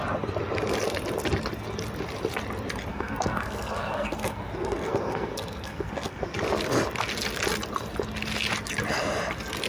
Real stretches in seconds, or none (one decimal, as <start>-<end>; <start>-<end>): 0.0-2.9; 6.2-9.7